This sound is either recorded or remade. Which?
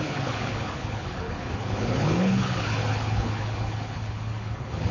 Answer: remade